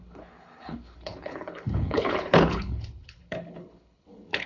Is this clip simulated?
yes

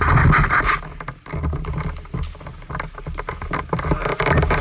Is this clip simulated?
no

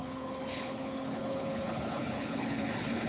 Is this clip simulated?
yes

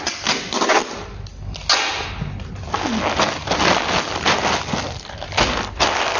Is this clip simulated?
no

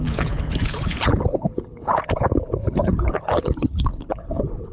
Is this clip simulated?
yes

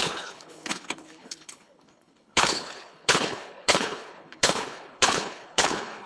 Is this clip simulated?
yes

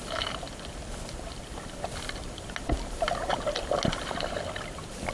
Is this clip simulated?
no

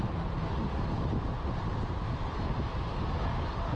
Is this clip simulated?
no